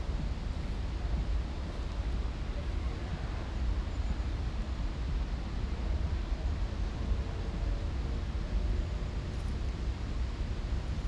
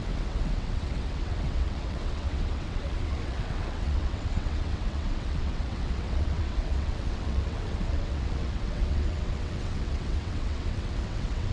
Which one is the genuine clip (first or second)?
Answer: first